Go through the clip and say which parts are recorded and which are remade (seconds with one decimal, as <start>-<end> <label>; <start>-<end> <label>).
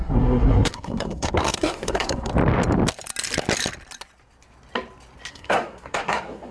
0.0-2.3 remade; 2.3-5.3 recorded; 5.3-6.5 remade